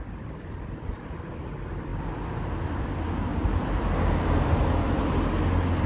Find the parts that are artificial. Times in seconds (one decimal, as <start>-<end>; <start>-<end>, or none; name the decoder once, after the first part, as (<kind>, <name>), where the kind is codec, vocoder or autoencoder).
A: none